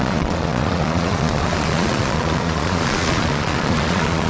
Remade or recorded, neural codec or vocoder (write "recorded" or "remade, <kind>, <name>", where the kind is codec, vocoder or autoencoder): remade, vocoder, Vocos